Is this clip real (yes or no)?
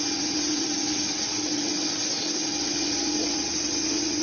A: no